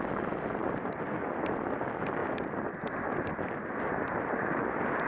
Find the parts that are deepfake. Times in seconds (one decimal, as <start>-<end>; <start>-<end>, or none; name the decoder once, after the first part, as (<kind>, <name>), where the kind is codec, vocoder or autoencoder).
none